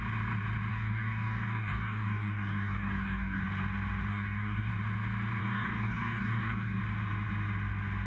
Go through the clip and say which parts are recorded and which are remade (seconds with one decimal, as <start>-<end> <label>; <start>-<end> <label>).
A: 0.0-0.7 recorded; 0.7-3.4 remade; 3.4-4.1 recorded; 4.1-4.7 remade; 4.7-5.4 recorded; 5.4-6.8 remade; 6.8-8.1 recorded